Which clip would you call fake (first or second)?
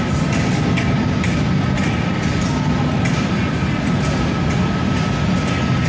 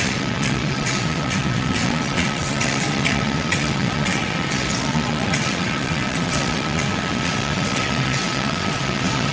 second